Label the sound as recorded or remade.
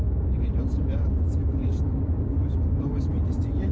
recorded